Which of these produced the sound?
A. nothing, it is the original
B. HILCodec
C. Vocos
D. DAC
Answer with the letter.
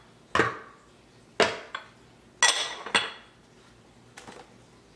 A